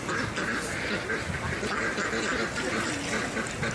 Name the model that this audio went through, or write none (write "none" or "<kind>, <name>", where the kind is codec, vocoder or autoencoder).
vocoder, BigVGAN v2